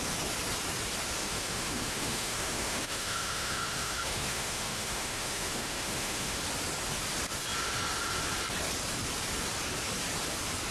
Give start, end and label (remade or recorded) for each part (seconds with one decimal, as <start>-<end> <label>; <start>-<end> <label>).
0.0-1.2 recorded; 1.2-6.4 remade; 6.4-10.7 recorded